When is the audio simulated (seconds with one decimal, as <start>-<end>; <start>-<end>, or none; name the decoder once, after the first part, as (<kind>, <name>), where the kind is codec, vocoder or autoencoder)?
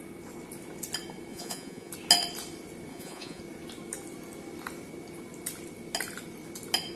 1.3-1.9 (vocoder, Vocos); 2.9-3.4